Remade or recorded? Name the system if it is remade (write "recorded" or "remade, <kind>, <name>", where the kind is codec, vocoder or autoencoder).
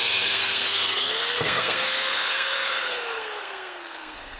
remade, codec, SNAC